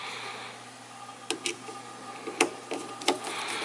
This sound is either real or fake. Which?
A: real